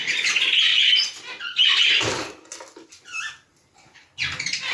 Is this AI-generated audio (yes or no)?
no